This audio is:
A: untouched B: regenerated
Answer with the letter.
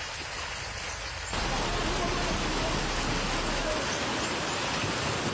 A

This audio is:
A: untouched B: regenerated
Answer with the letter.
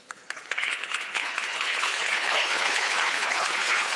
B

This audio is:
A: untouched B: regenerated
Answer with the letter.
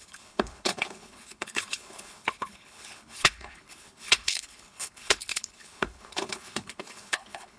B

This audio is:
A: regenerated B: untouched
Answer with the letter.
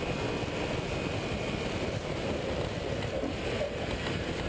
B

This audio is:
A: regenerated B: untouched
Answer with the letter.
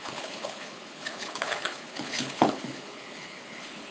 A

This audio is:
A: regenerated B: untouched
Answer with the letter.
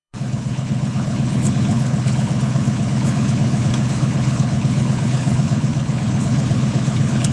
A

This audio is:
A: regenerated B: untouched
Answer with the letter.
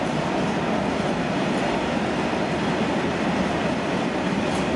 B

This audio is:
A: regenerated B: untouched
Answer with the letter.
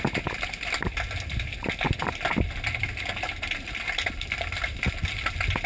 B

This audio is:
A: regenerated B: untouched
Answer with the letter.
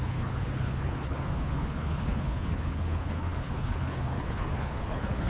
A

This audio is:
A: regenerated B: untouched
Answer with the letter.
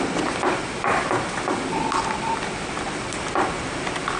B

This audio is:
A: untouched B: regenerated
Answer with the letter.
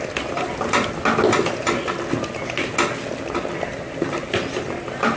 A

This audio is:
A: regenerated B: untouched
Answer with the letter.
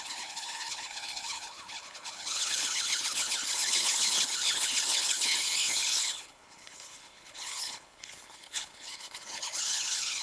A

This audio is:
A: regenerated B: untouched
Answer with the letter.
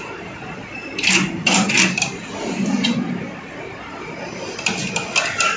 B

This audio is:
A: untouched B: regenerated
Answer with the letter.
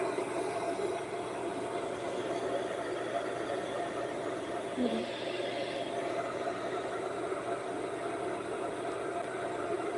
A